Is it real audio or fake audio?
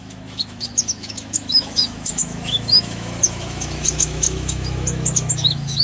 fake